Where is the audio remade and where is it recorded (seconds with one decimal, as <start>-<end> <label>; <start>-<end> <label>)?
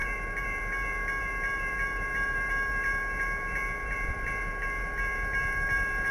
0.0-6.1 remade